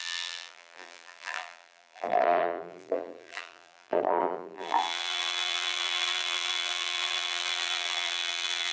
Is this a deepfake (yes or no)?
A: yes